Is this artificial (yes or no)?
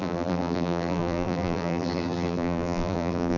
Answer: yes